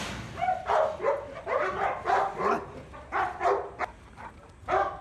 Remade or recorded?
recorded